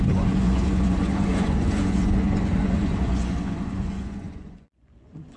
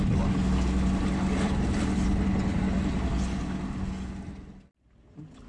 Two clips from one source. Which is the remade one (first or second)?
first